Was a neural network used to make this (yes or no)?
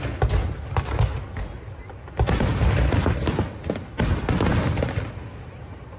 no